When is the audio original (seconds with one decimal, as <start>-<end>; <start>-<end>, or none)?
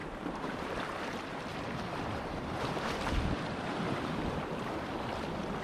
0.7-1.5; 4.9-5.6